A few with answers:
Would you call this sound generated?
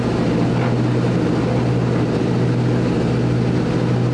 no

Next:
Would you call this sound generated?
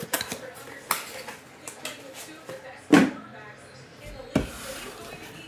no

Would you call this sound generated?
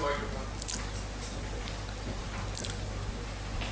no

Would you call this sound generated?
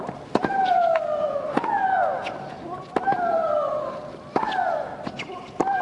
no